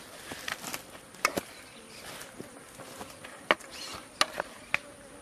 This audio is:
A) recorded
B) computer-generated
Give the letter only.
A